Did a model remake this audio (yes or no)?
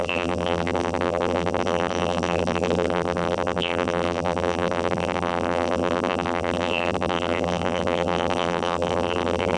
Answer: yes